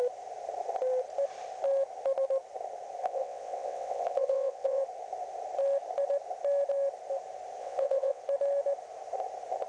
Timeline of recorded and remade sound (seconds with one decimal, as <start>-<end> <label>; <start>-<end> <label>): 0.0-3.0 recorded; 3.0-4.8 remade; 4.8-7.6 recorded; 7.6-8.2 remade; 8.2-9.7 recorded